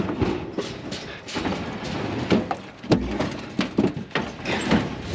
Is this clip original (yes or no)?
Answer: yes